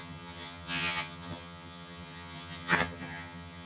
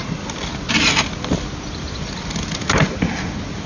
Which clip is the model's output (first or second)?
first